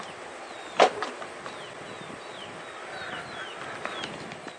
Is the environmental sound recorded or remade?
recorded